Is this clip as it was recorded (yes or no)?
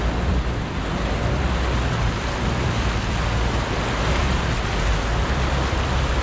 yes